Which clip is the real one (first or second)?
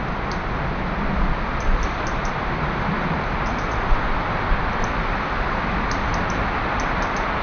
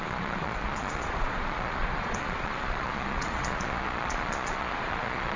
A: first